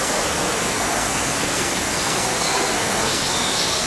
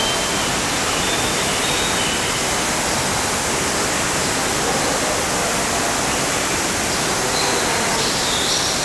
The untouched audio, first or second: second